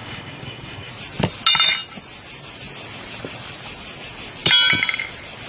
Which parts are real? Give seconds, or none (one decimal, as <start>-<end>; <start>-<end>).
0.9-5.5